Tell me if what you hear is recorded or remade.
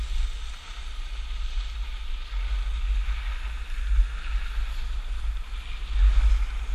recorded